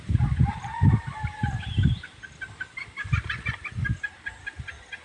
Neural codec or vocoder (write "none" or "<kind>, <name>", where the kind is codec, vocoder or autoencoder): none